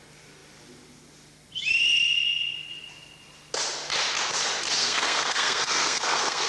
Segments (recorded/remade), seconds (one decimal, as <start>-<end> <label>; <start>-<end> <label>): 0.0-4.8 recorded; 4.8-6.5 remade